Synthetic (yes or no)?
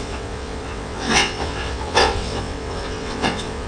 yes